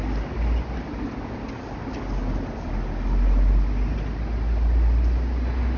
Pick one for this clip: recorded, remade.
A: recorded